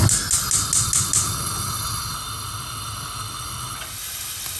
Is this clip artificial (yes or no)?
no